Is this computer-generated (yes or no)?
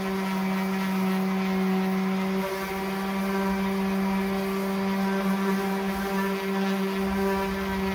no